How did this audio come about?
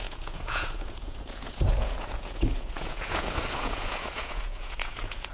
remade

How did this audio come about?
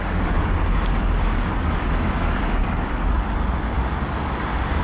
remade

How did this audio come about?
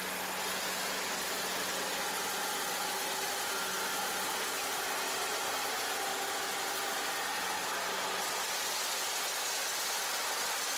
recorded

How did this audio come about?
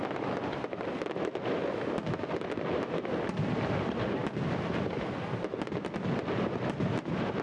recorded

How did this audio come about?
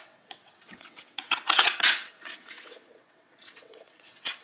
remade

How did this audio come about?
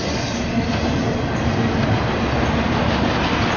recorded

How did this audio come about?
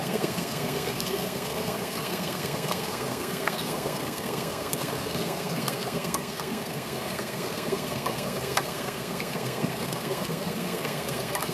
remade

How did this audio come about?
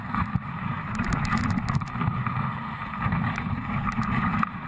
recorded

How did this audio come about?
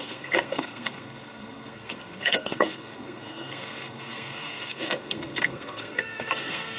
remade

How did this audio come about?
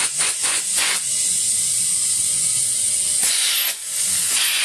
remade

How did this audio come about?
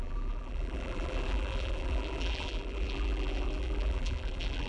remade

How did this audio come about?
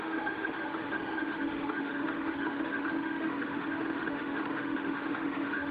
remade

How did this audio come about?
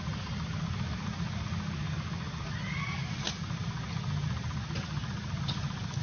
recorded